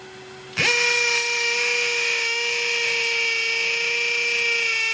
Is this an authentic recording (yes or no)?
yes